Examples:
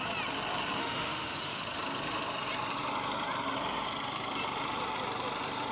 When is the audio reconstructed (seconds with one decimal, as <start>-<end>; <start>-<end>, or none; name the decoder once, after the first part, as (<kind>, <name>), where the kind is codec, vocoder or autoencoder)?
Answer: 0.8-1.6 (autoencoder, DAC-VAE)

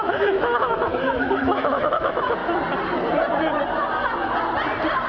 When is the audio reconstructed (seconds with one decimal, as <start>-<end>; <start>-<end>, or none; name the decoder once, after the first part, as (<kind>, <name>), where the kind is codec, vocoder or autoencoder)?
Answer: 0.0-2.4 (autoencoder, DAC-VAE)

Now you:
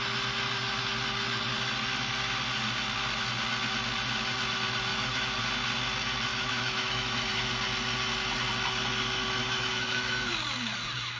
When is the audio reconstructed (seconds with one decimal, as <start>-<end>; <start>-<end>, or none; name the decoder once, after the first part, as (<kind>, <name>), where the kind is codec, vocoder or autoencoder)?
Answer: 4.9-5.4 (autoencoder, DAC-VAE); 6.3-7.5; 9.4-10.3

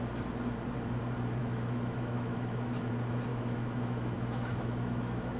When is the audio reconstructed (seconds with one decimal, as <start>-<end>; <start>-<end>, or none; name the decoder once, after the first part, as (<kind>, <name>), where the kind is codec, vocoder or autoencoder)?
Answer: 1.4-2.9 (autoencoder, DAC-VAE); 3.3-5.4

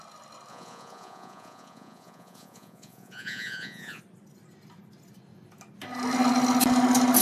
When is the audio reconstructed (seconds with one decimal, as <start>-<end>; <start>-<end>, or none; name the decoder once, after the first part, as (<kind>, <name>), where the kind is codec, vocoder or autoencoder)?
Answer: 0.5-4.0 (vocoder, Vocos)

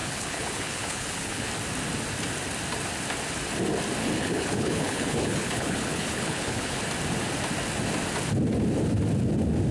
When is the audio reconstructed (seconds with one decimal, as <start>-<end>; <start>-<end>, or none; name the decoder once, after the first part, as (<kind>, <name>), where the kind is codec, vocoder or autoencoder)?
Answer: 0.0-1.5 (codec, HILCodec); 4.0-6.8

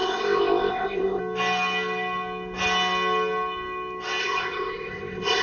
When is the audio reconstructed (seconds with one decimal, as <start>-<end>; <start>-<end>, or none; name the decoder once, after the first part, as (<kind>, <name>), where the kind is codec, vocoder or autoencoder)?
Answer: 0.0-1.2 (codec, ZipCodec); 4.2-5.4